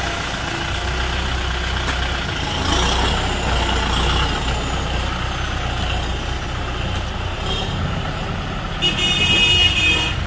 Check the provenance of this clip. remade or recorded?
recorded